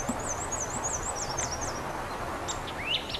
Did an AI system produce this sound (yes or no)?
no